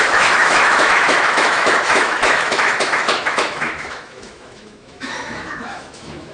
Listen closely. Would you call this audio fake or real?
fake